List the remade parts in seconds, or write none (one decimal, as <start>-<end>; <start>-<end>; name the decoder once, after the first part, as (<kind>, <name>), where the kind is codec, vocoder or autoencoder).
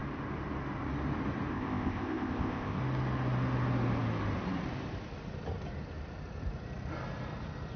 1.5-2.8 (codec, ZipCodec)